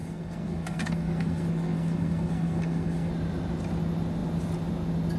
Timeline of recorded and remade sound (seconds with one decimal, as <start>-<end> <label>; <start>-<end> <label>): 0.0-3.1 remade; 3.1-5.2 recorded